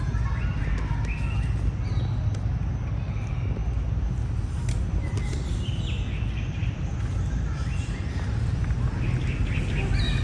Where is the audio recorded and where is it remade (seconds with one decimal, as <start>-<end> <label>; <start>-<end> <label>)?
0.0-10.2 recorded